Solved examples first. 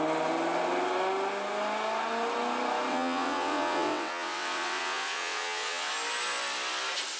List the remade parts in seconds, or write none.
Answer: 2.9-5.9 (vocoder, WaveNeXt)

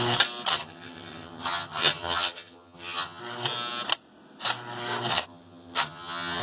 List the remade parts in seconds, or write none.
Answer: 0.5-3.2 (vocoder, HiFi-GAN); 5.1-6.4